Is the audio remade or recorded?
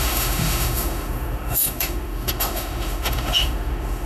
remade